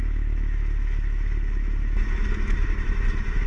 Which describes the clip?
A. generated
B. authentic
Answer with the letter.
A